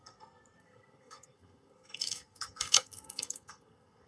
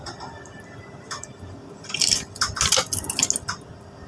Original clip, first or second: second